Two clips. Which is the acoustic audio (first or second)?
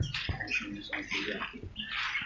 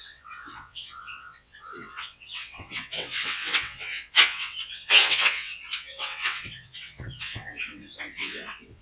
first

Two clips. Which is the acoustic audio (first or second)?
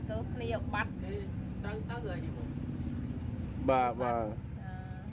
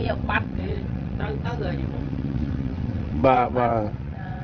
first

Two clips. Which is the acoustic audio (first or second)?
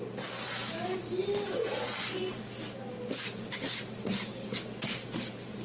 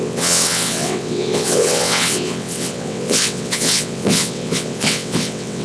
first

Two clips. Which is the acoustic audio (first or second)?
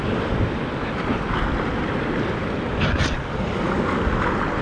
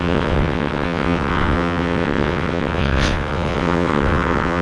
first